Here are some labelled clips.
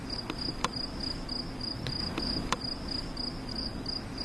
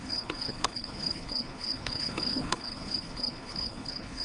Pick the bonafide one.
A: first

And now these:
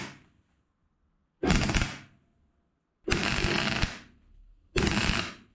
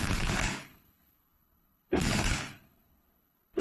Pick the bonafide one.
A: first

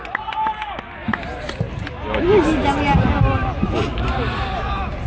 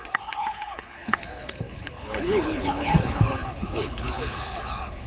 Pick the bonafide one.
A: first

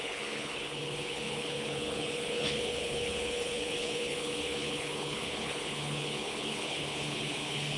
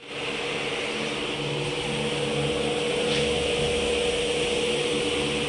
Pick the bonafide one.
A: second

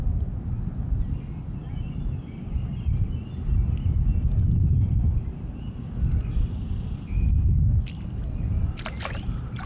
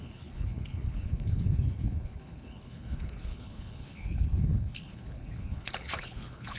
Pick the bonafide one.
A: first